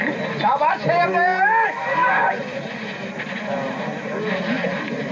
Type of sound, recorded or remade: recorded